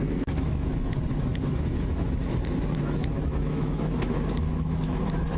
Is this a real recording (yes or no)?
no